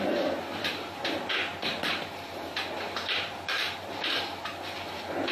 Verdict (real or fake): fake